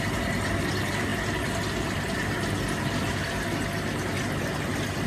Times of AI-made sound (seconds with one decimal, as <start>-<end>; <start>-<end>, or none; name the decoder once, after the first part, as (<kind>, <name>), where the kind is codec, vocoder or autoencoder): none